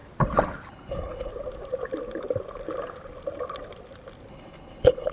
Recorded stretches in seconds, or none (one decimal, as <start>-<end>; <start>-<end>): 0.0-0.7; 1.3-4.3